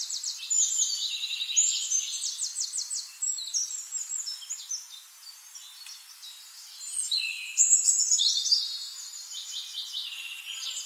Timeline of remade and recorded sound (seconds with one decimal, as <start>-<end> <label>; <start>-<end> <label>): 0.0-10.9 recorded